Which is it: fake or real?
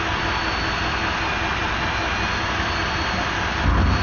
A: real